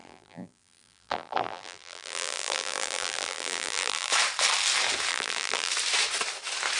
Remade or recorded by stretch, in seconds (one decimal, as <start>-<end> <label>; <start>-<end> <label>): 0.0-4.1 remade; 4.1-5.1 recorded; 5.1-5.7 remade; 5.7-6.8 recorded